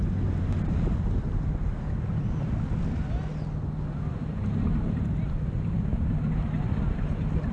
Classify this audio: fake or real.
real